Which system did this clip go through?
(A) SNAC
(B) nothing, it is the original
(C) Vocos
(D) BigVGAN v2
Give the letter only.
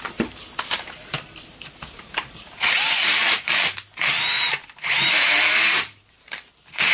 D